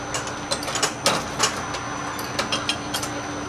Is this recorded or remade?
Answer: recorded